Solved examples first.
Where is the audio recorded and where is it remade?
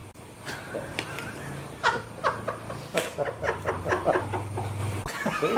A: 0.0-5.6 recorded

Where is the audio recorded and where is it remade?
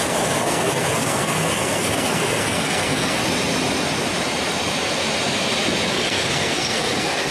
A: 0.0-3.2 remade; 3.2-5.9 recorded; 5.9-7.3 remade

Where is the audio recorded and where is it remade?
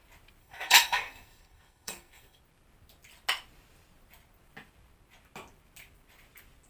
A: 0.0-0.4 recorded; 0.4-2.4 remade; 2.4-6.7 recorded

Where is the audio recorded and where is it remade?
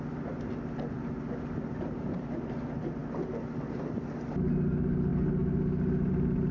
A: 0.0-6.5 recorded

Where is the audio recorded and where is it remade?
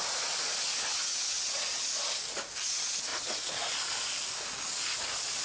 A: 0.0-5.4 recorded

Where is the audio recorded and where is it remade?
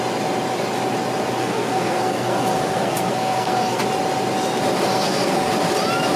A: 0.0-1.4 recorded; 1.4-3.8 remade; 3.8-4.9 recorded; 4.9-5.5 remade; 5.5-6.2 recorded